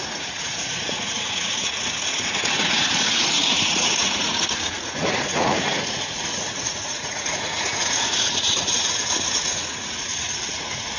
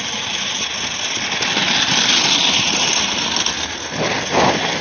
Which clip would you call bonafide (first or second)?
second